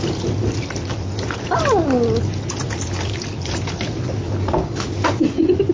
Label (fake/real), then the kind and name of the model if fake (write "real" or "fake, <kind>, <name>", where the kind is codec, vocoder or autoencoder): real